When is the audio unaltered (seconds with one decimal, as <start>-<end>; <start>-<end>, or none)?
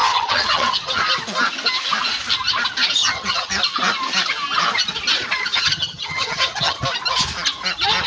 1.0-3.0; 3.6-5.5; 6.8-8.1